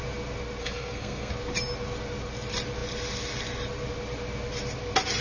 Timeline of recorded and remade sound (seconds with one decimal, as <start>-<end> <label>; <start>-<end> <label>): 0.0-0.6 recorded; 0.6-1.3 remade; 1.3-5.2 recorded